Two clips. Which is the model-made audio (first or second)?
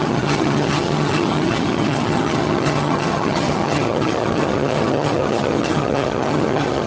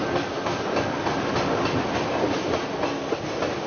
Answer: first